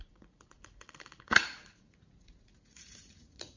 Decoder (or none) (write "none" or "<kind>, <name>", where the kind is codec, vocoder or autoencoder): vocoder, Vocos